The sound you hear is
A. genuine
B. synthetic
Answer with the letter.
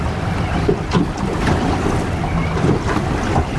A